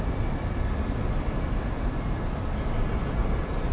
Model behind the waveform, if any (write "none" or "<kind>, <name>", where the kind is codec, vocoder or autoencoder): none